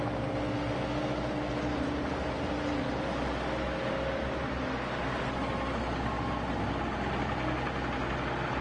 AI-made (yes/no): no